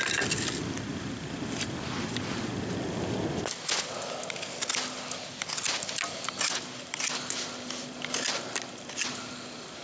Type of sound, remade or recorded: recorded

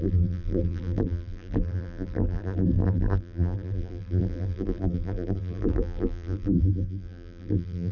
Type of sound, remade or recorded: remade